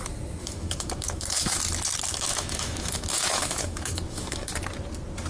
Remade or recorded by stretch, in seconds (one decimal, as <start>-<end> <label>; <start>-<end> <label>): 0.0-0.4 recorded; 0.4-1.6 remade; 1.6-2.1 recorded; 2.1-4.5 remade; 4.5-5.3 recorded